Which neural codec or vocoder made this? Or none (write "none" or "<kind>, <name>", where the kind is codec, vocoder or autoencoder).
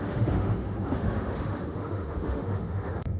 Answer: autoencoder, DAC-VAE